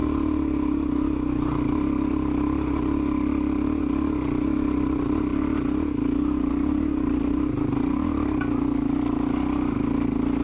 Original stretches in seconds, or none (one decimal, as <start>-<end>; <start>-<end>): 0.0-10.4